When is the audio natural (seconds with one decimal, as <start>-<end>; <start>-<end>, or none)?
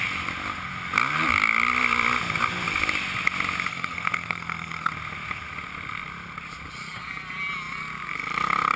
0.0-3.7; 4.9-8.8